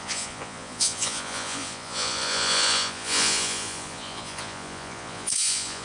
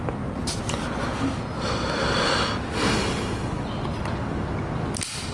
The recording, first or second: second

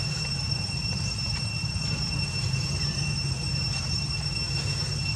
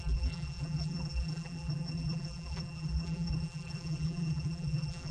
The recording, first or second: first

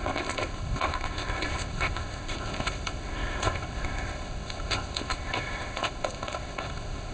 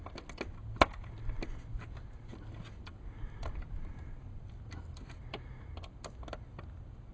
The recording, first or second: second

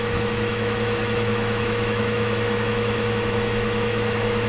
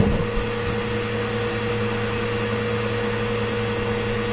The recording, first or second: second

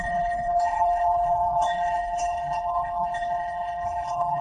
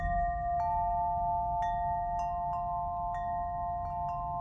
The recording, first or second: second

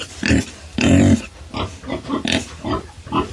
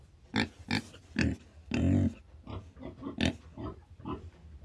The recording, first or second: second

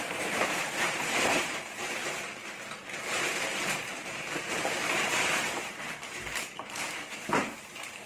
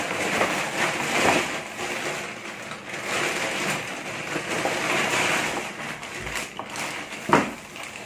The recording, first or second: second